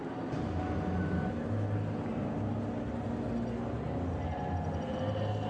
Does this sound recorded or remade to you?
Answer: recorded